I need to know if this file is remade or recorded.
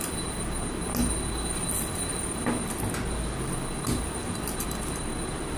recorded